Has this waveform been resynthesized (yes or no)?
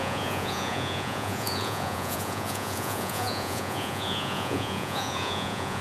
yes